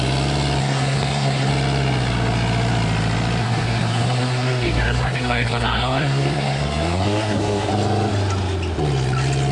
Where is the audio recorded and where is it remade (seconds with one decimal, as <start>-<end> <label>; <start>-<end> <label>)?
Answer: 0.0-0.6 recorded; 0.6-1.5 remade; 1.5-3.4 recorded; 3.4-7.7 remade; 7.7-9.5 recorded